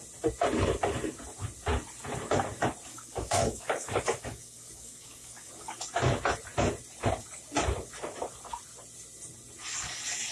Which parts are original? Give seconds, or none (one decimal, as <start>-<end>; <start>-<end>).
0.0-2.9; 5.8-10.3